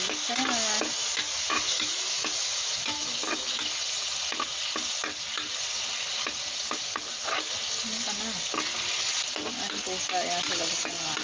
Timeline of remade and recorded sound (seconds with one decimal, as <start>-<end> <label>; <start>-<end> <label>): 0.0-1.0 recorded; 1.0-3.6 remade; 3.6-11.2 recorded